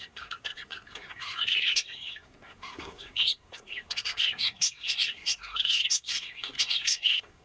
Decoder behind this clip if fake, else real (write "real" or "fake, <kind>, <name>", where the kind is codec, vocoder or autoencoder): fake, codec, SNAC